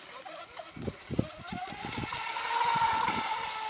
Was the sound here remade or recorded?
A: recorded